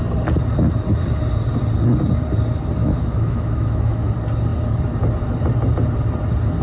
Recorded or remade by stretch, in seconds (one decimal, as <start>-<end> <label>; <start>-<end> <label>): 0.0-2.8 recorded; 2.8-4.1 remade; 4.1-6.6 recorded